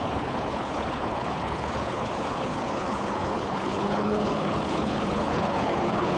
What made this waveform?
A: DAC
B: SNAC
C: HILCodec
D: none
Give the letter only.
C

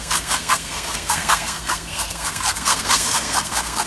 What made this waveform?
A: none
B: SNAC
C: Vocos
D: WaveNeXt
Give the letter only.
B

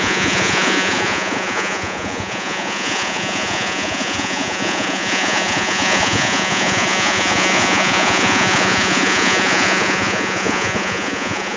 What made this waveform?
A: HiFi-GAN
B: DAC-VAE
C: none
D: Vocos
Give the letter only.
D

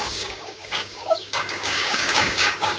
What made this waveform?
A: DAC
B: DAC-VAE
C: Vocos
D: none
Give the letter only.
A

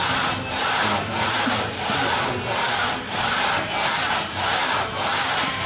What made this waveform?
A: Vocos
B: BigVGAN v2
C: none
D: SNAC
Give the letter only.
C